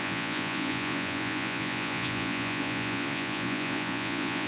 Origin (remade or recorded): remade